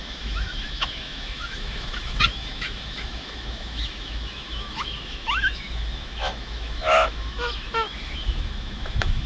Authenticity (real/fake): fake